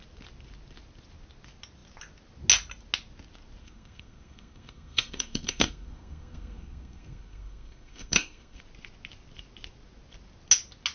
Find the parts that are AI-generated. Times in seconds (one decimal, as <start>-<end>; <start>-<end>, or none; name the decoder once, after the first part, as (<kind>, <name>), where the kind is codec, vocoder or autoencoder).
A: 3.6-8.6 (codec, SNAC)